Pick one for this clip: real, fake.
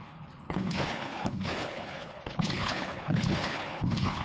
fake